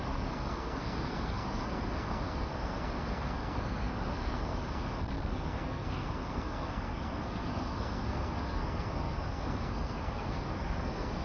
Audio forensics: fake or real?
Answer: fake